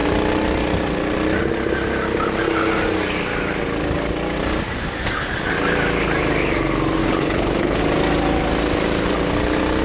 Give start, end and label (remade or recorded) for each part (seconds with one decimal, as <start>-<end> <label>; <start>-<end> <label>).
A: 0.0-7.0 recorded; 7.0-7.8 remade; 7.8-9.8 recorded